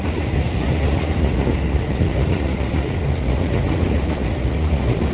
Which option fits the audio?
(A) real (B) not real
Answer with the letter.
B